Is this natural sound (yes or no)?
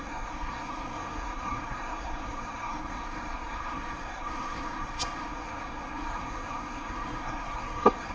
no